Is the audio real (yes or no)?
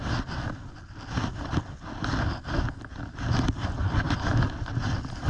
yes